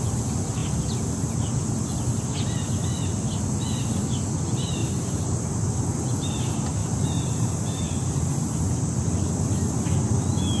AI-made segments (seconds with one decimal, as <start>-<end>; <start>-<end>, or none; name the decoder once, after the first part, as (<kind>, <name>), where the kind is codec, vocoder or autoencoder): 4.8-5.8 (vocoder, BigVGAN v2); 6.8-7.9